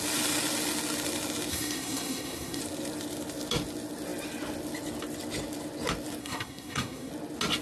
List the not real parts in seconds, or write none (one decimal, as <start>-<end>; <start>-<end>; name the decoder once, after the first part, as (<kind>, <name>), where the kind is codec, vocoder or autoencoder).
1.5-2.6 (codec, SNAC); 6.2-7.1